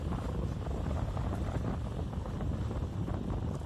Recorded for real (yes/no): yes